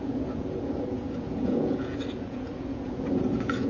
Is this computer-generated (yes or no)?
yes